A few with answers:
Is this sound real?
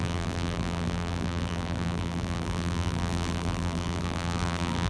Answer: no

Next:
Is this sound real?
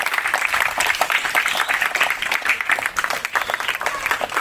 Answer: no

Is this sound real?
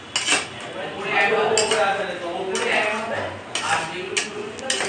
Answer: yes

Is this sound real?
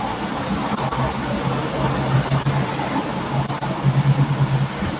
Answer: yes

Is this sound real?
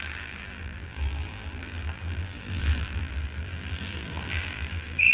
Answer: no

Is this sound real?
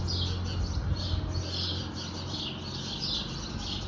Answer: yes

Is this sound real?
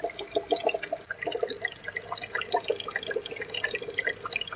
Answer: yes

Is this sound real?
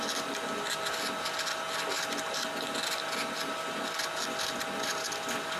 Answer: yes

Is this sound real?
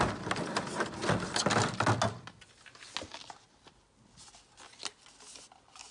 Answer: yes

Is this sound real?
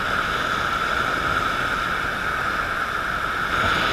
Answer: yes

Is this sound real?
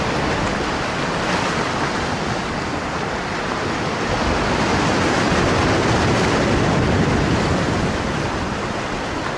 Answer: yes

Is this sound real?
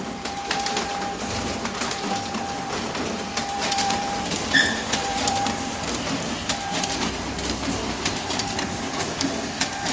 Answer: no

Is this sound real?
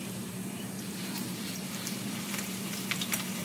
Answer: no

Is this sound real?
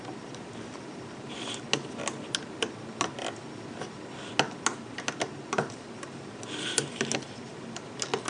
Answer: yes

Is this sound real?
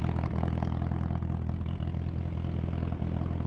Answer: yes